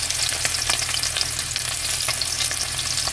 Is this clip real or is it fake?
real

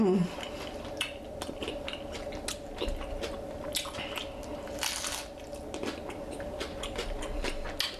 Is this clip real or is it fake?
real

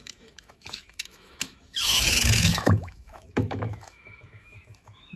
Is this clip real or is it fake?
fake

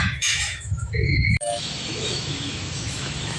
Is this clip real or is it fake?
fake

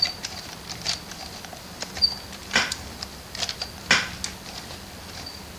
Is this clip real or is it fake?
real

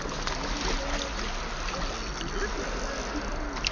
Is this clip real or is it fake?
real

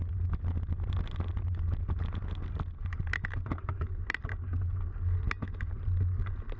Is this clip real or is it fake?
real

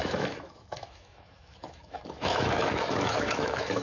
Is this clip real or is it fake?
fake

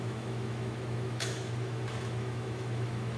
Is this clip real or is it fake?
fake